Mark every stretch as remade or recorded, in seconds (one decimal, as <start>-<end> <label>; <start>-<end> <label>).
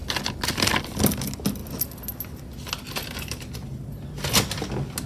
0.0-5.1 recorded